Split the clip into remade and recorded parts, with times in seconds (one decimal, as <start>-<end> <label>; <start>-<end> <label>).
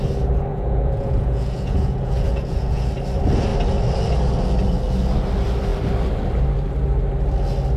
0.0-0.5 recorded; 0.5-2.9 remade; 2.9-7.8 recorded